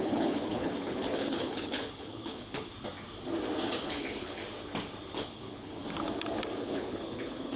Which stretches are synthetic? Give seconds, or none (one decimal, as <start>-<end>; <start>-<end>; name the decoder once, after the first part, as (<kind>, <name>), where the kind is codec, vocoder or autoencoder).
0.0-2.7 (codec, HILCodec); 3.8-4.4; 5.2-5.8; 6.6-7.6